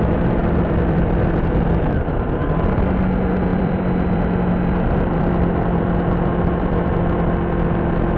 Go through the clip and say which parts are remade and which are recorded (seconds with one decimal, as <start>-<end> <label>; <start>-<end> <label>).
0.0-0.4 recorded; 0.4-2.0 remade; 2.0-3.5 recorded; 3.5-6.9 remade; 6.9-8.2 recorded